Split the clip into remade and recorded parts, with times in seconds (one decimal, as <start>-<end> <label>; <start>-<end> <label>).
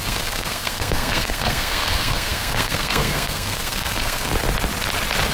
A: 0.0-4.3 remade; 4.3-5.3 recorded